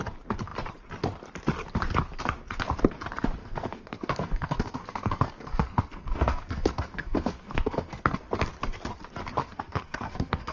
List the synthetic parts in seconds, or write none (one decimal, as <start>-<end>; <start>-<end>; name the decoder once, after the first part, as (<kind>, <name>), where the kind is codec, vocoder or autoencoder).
3.4-8.2 (codec, SNAC); 9.4-10.5